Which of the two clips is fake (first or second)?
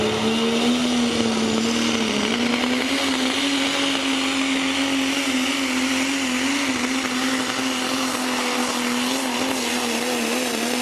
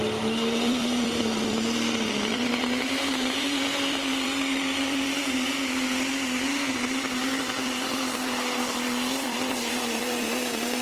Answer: second